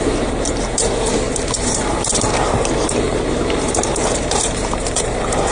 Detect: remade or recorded remade